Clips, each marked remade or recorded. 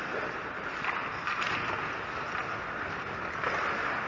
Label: recorded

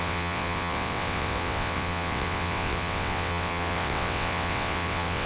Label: remade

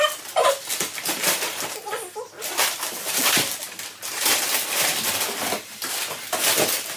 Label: recorded